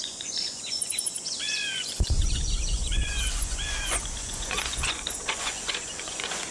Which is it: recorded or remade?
remade